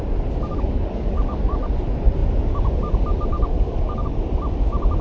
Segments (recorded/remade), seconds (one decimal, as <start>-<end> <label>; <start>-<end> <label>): 0.0-0.5 recorded; 0.5-1.7 remade; 1.7-3.3 recorded; 3.3-4.2 remade; 4.2-5.0 recorded